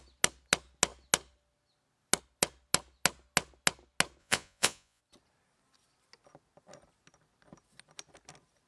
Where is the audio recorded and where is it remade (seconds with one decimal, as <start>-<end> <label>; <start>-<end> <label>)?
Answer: 0.0-4.2 recorded; 4.2-5.0 remade; 5.0-8.7 recorded